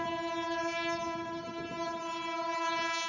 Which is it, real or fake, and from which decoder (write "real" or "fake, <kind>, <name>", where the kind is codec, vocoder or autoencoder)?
real